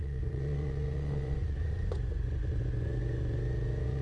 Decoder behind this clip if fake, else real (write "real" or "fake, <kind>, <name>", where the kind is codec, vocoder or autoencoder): fake, vocoder, Vocos